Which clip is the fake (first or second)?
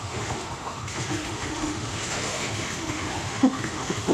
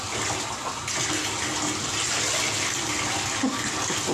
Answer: first